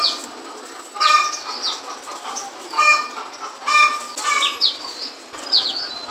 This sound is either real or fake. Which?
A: real